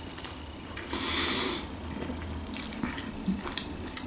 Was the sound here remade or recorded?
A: recorded